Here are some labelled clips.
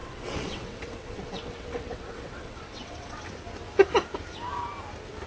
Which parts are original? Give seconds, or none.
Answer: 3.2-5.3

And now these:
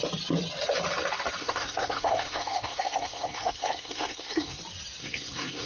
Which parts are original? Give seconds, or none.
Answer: 0.0-1.4; 4.6-5.0

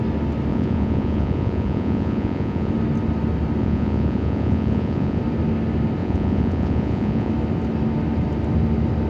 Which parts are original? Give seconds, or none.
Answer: 0.0-0.5; 2.7-3.6; 5.2-6.0; 7.3-9.1

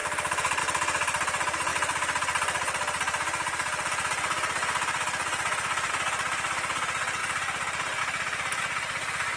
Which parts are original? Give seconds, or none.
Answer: 0.0-9.4